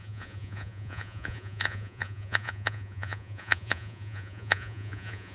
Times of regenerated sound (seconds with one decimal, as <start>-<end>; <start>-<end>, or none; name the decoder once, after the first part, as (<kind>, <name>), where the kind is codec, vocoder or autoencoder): 0.0-5.3 (vocoder, Vocos)